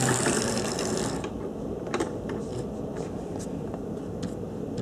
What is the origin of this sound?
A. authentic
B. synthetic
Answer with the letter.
A